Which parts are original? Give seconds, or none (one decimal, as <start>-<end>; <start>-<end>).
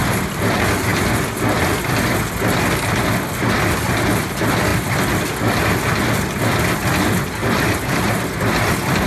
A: 0.0-4.7; 5.2-7.4; 8.4-9.1